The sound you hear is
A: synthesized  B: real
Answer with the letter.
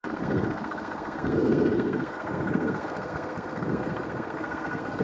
A